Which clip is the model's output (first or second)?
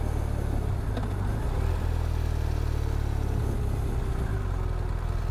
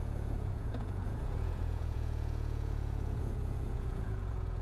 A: second